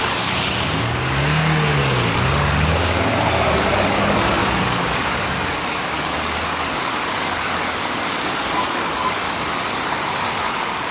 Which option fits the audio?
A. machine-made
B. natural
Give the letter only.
A